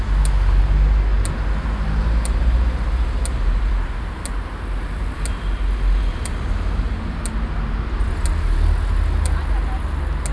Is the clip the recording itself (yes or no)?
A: yes